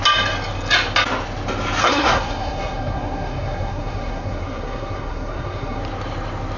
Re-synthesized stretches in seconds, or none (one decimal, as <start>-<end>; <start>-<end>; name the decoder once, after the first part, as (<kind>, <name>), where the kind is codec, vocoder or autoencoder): 1.8-5.8 (codec, SNAC)